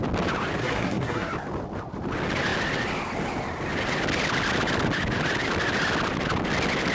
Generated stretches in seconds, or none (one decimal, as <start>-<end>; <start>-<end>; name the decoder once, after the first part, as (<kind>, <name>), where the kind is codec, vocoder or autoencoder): 0.6-1.3 (codec, SNAC)